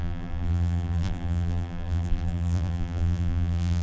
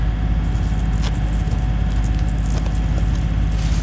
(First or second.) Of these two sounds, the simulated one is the first